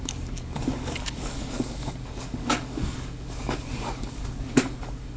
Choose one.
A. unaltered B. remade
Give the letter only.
B